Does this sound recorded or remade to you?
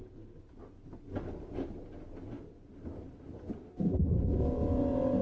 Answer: recorded